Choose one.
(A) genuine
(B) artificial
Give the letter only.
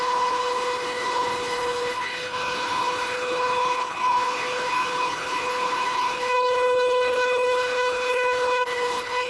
B